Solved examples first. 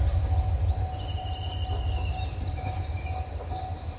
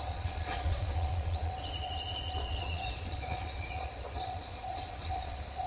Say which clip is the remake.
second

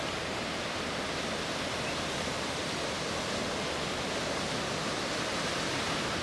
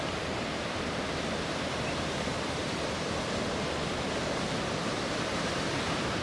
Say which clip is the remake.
second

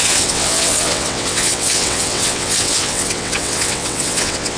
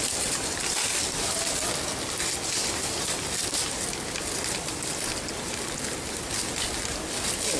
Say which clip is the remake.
first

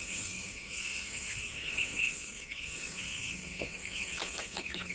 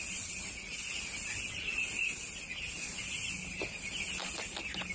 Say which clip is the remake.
first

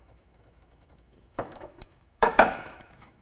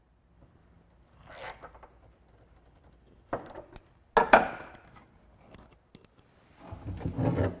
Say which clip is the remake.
first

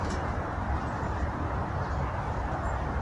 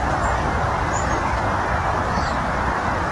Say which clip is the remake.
first